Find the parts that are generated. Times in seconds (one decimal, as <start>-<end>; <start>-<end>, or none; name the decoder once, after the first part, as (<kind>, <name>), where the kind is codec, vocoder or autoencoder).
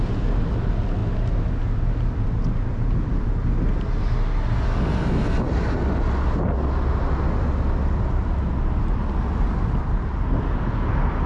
none